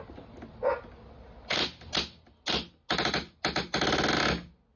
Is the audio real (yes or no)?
yes